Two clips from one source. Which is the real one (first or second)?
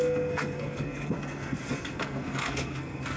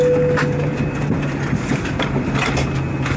second